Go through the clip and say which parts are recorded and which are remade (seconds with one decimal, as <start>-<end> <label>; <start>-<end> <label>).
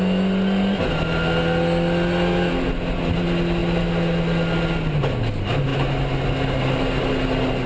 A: 0.0-7.7 recorded